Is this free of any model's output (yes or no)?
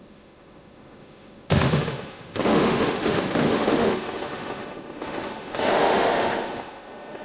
no